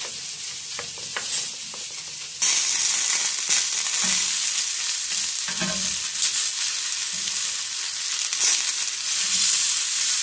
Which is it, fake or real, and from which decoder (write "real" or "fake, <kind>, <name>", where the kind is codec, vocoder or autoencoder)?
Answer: real